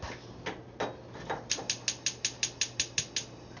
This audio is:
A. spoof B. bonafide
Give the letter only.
B